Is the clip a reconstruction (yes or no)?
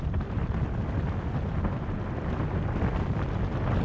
no